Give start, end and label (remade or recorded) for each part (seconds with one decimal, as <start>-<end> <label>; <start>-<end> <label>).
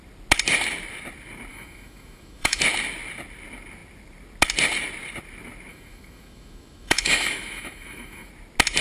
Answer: 0.0-1.5 recorded; 1.5-2.6 remade; 2.6-5.7 recorded; 5.7-8.3 remade; 8.3-8.8 recorded